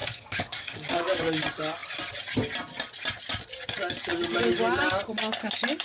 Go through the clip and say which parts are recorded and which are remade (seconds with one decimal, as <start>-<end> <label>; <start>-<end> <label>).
0.0-1.2 remade; 1.2-5.8 recorded